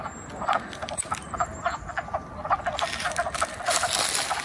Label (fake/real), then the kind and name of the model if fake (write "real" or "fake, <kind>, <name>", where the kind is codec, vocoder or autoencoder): real